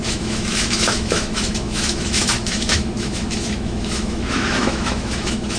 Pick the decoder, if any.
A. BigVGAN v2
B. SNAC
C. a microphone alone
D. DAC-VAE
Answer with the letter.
D